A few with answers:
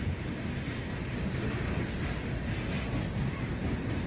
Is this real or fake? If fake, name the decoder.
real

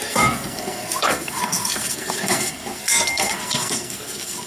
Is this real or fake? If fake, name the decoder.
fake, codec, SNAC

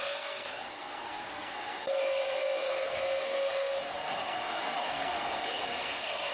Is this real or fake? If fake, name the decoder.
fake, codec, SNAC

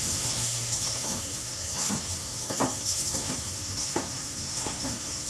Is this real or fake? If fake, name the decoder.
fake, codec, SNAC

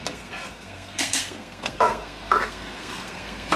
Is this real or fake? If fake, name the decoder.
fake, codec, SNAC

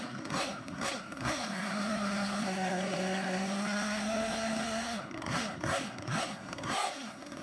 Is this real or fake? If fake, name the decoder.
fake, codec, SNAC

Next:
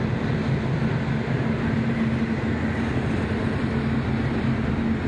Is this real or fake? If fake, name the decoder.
real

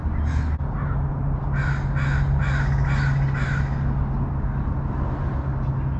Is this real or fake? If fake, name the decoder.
real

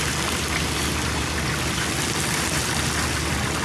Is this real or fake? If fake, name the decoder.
real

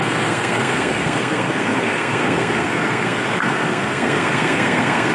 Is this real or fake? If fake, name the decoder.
fake, codec, SNAC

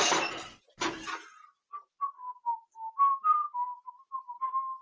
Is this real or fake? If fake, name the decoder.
real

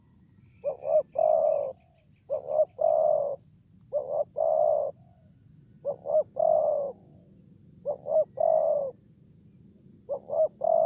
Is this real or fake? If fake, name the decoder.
real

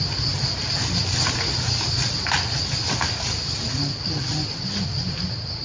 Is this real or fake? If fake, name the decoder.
real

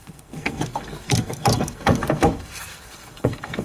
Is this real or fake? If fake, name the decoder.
fake, codec, SNAC